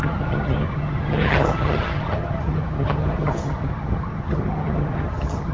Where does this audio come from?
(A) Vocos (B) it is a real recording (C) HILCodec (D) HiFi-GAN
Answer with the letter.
D